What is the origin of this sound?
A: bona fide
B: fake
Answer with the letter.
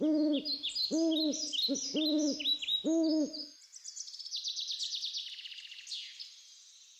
A